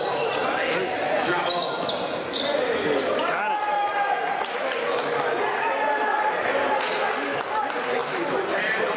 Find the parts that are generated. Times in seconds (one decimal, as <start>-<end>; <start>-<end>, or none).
8.0-8.5